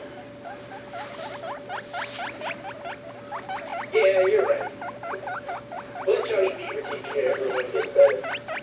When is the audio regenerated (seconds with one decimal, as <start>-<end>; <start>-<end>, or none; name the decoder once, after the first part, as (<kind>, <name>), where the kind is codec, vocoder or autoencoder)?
none